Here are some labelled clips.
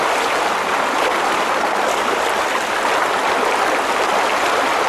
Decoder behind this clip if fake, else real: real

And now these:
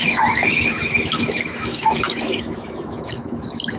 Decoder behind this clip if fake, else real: fake, autoencoder, DAC-VAE